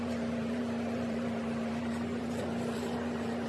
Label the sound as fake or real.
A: fake